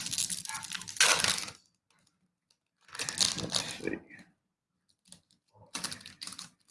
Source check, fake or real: real